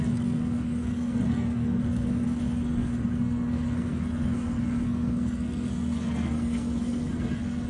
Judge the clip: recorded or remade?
remade